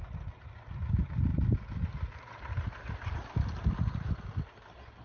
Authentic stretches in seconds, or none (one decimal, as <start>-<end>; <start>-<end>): 0.0-5.0